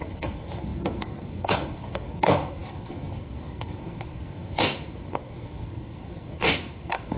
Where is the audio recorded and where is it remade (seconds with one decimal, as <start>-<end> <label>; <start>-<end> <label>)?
0.0-7.2 remade